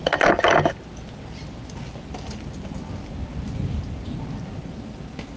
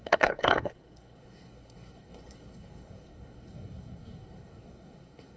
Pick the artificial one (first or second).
second